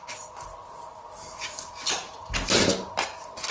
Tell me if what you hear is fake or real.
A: real